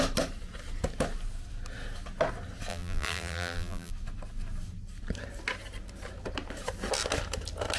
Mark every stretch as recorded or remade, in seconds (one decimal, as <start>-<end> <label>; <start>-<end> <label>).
0.0-2.7 recorded; 2.7-3.9 remade; 3.9-7.8 recorded